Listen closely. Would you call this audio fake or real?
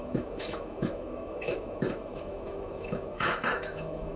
fake